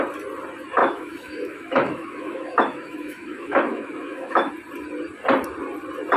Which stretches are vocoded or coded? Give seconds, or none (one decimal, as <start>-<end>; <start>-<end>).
0.8-4.5